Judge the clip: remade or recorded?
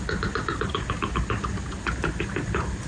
recorded